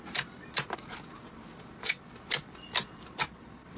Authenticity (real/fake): real